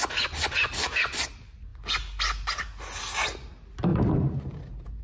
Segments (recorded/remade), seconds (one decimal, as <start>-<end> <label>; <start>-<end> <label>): 0.0-3.9 recorded; 3.9-5.0 remade